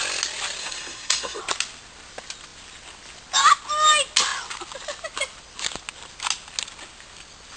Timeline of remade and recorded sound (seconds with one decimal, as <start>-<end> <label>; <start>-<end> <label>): 0.0-0.6 recorded; 0.6-1.4 remade; 1.4-7.6 recorded